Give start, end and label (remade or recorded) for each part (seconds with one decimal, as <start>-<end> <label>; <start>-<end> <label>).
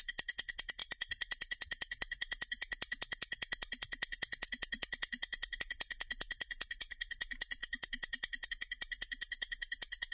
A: 0.0-10.1 remade